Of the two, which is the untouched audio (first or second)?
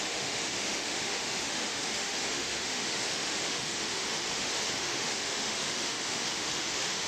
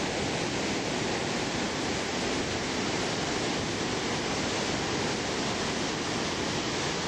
second